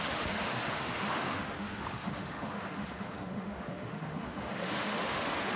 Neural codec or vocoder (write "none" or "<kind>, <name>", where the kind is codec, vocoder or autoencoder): autoencoder, DAC-VAE